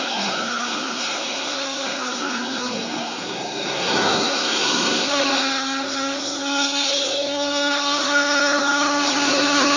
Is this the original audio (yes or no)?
no